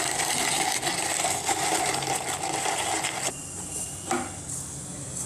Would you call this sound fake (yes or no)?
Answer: no